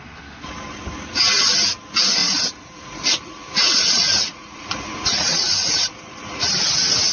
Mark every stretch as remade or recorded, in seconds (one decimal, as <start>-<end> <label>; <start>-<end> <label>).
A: 0.0-2.2 recorded; 2.2-6.5 remade; 6.5-7.1 recorded